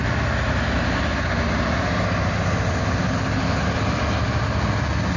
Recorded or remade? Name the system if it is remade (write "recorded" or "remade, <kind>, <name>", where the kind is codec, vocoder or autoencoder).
recorded